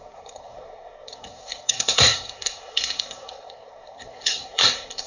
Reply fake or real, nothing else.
fake